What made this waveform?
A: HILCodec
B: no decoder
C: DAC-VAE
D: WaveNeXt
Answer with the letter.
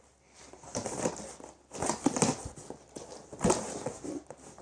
B